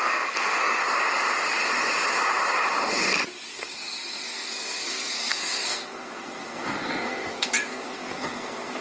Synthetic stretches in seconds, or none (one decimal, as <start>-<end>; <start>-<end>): 0.0-0.8; 3.5-8.8